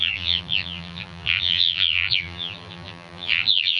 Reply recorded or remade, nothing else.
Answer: remade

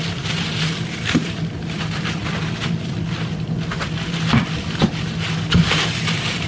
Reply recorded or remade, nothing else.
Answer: remade